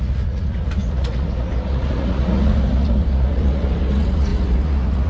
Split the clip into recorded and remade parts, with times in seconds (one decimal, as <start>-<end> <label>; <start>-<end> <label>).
0.0-5.1 remade

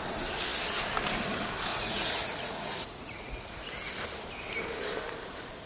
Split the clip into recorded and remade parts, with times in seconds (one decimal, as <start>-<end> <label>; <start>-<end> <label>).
0.0-1.7 recorded; 1.7-3.6 remade; 3.6-5.7 recorded

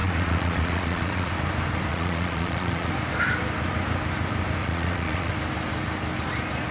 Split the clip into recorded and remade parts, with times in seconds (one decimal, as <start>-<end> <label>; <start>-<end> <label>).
0.0-1.3 remade; 1.3-1.9 recorded; 1.9-2.9 remade; 2.9-4.6 recorded; 4.6-5.3 remade; 5.3-6.7 recorded

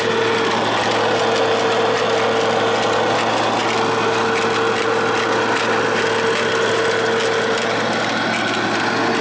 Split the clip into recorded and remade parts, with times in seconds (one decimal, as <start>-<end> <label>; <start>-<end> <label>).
0.0-9.2 recorded

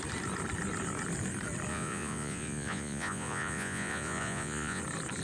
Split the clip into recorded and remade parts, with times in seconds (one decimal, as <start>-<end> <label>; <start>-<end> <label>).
0.0-1.7 recorded; 1.7-4.8 remade; 4.8-5.2 recorded

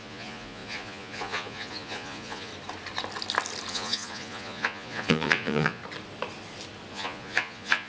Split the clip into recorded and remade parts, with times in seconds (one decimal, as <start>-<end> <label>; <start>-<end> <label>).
0.0-2.5 remade; 2.5-3.7 recorded; 3.7-5.8 remade; 5.8-6.9 recorded; 6.9-7.9 remade